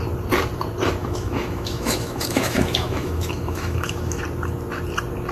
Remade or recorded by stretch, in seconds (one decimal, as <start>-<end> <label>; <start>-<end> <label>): 0.0-1.0 recorded; 1.0-4.2 remade; 4.2-5.3 recorded